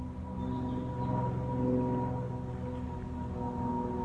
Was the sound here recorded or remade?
recorded